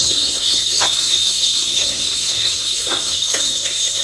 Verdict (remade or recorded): remade